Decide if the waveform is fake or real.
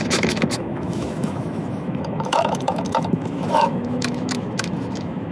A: fake